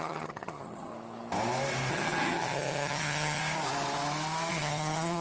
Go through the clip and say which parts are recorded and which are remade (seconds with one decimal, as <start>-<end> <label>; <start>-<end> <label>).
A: 0.0-0.9 remade; 0.9-1.9 recorded; 1.9-3.4 remade; 3.4-4.5 recorded; 4.5-5.2 remade